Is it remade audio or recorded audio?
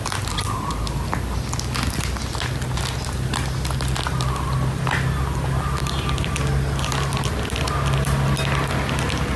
recorded